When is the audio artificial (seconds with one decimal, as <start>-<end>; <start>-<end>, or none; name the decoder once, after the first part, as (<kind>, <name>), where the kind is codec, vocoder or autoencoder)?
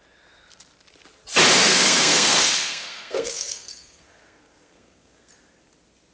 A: 1.6-5.3 (codec, SNAC)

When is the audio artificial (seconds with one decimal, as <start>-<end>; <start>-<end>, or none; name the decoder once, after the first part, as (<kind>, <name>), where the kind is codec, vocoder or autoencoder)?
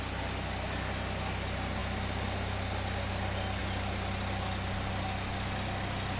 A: none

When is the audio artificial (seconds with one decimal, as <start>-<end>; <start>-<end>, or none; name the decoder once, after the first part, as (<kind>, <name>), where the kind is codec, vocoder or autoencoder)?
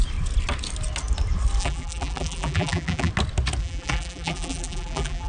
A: 1.6-3.1 (vocoder, BigVGAN v2); 3.6-5.3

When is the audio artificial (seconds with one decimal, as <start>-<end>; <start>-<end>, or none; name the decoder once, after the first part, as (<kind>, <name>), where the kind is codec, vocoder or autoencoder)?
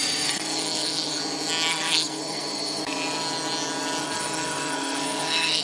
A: 0.0-1.2 (codec, SNAC); 1.7-2.8; 4.0-5.6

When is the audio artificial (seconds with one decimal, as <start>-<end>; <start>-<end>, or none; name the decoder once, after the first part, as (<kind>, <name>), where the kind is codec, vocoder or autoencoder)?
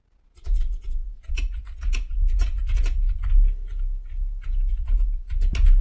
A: 0.0-3.3 (vocoder, Vocos); 4.7-5.3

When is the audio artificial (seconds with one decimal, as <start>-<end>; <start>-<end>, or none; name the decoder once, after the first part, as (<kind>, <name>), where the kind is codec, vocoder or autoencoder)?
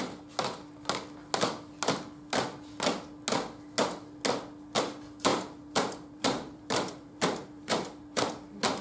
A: 5.3-8.3 (vocoder, BigVGAN v2)